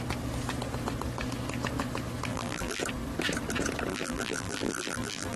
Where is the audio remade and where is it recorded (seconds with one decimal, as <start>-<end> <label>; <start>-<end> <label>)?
0.0-2.3 recorded; 2.3-2.8 remade; 2.8-3.9 recorded; 3.9-5.4 remade